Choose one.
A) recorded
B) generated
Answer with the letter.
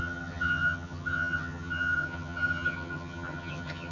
B